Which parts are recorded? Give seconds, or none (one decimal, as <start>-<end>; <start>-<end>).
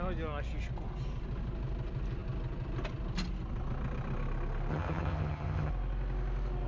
0.0-4.7; 5.7-6.7